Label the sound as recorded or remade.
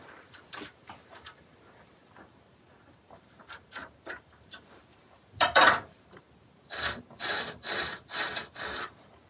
remade